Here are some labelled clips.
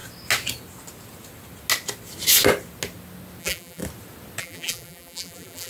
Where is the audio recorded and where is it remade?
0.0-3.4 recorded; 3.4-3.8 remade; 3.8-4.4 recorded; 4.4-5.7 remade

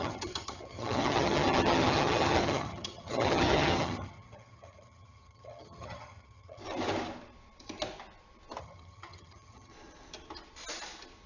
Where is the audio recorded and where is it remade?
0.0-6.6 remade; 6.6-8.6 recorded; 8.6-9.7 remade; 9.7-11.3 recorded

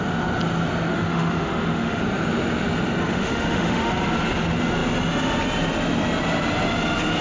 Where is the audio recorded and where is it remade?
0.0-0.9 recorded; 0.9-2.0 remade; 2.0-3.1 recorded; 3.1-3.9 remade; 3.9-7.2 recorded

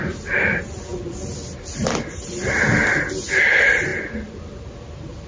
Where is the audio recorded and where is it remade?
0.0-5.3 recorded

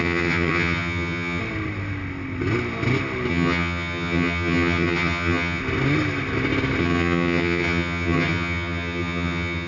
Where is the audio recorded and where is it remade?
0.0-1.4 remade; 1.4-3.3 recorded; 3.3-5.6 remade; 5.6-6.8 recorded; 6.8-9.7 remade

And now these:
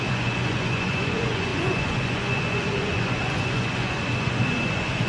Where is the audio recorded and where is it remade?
0.0-5.1 remade